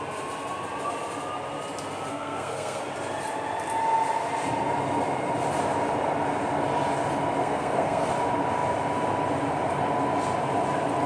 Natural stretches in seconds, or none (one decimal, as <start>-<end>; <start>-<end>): 0.0-2.1; 2.8-7.4; 8.1-11.1